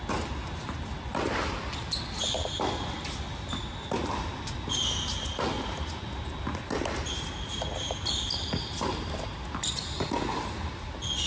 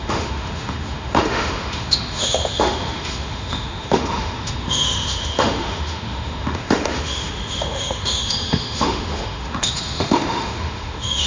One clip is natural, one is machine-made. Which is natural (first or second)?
first